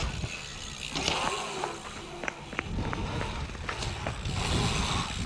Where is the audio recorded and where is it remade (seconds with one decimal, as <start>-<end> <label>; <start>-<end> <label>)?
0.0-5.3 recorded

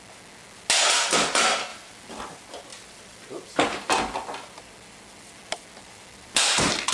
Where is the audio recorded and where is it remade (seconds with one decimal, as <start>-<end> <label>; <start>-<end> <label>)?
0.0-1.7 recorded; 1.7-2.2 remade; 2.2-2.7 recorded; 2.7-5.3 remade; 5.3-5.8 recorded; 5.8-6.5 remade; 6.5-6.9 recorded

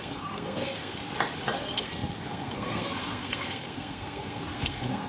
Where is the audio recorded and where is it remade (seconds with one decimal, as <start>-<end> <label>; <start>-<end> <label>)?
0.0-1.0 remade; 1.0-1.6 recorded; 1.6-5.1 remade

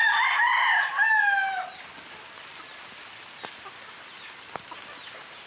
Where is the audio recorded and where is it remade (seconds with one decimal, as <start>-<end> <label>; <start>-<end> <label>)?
0.0-5.5 recorded

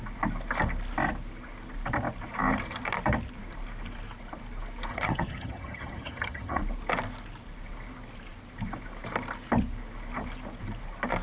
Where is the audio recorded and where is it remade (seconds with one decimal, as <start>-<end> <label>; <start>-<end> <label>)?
0.0-4.9 recorded; 4.9-6.6 remade; 6.6-11.2 recorded